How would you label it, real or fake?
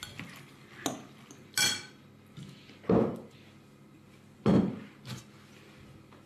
real